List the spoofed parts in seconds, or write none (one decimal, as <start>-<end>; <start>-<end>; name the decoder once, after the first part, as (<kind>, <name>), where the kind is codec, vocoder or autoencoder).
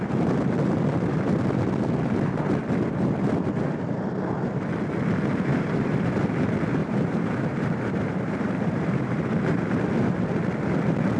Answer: 5.5-6.1 (vocoder, BigVGAN v2); 6.8-9.6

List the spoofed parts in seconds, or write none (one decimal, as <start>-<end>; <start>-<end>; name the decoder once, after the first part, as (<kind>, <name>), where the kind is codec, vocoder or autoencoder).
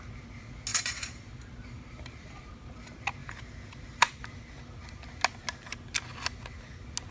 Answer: 0.7-2.8 (vocoder, BigVGAN v2); 3.2-4.1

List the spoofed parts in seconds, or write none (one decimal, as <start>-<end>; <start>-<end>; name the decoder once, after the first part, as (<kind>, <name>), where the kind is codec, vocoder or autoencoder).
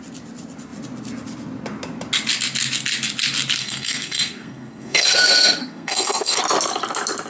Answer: 3.6-6.4 (codec, SNAC)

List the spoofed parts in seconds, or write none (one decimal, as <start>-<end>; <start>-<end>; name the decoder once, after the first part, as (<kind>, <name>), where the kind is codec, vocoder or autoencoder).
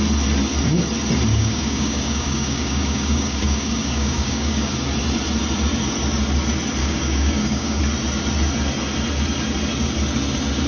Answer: 1.3-4.7 (codec, DAC); 6.8-7.8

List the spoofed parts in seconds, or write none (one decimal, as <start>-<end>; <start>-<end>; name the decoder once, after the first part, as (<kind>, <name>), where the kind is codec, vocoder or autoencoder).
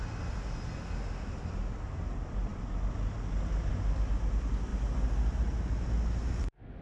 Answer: none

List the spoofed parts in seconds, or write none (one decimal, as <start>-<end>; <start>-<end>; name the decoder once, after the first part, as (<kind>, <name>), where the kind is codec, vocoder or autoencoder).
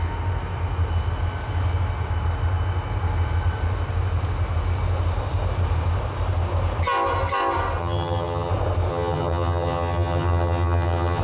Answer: 7.8-8.5 (vocoder, HiFi-GAN); 8.9-11.2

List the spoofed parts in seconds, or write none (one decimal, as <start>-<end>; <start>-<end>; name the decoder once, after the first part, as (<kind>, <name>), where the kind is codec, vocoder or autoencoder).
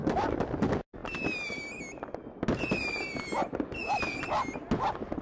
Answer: none